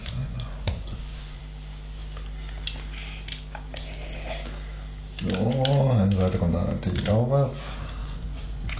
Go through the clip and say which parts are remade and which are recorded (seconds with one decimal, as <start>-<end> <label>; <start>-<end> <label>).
0.0-1.4 remade; 1.4-8.0 recorded; 8.0-8.8 remade